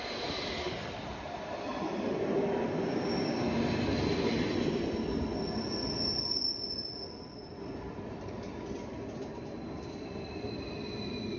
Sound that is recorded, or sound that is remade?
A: recorded